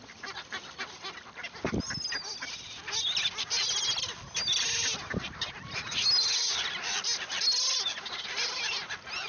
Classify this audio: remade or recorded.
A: recorded